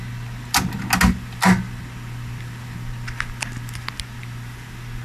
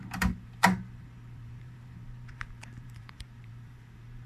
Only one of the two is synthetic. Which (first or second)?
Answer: second